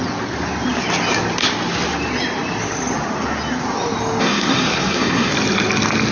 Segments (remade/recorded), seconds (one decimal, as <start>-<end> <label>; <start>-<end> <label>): 0.0-4.2 recorded; 4.2-5.3 remade; 5.3-6.1 recorded